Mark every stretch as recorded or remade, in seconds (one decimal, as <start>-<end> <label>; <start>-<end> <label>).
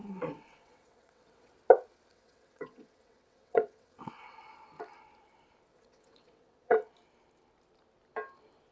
0.0-1.5 remade; 1.5-2.1 recorded; 2.1-4.4 remade; 4.4-5.7 recorded; 5.7-6.9 remade; 6.9-8.7 recorded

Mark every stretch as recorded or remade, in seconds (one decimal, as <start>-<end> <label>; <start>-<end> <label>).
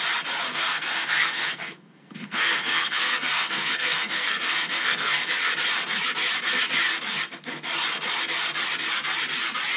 0.0-0.5 recorded; 0.5-5.3 remade; 5.3-9.8 recorded